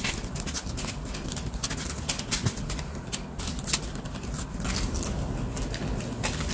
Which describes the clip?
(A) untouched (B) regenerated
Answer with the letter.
A